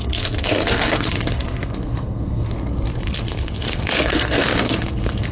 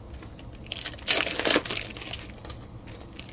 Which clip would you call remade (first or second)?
first